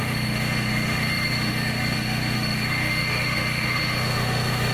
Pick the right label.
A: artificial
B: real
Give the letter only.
A